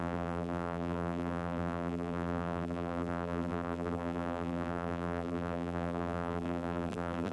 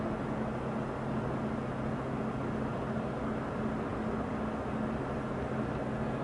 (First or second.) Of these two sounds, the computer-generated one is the first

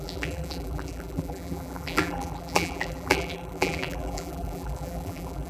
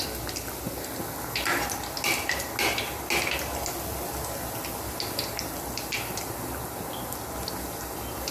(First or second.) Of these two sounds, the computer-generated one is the first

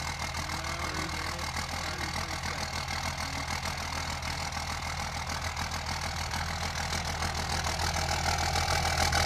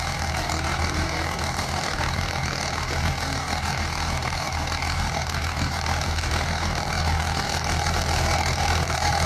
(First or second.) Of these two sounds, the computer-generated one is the second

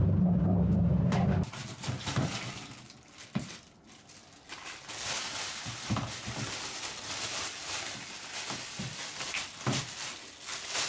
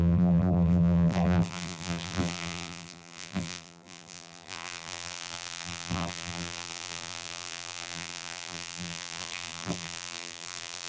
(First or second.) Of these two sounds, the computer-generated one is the second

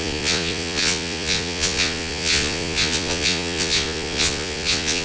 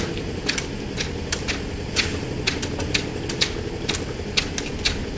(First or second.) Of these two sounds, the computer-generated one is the first